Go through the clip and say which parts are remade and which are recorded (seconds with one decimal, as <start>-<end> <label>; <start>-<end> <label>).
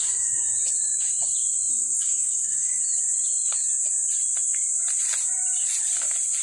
0.0-1.7 recorded; 1.7-2.8 remade; 2.8-6.4 recorded